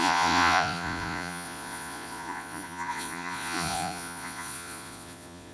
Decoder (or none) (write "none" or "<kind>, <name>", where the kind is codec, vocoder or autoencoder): vocoder, Vocos